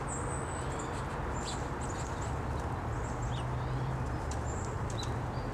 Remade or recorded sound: recorded